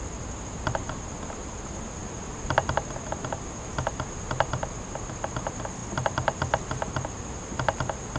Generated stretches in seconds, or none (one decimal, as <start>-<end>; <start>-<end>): none